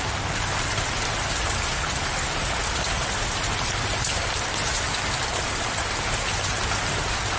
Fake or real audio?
real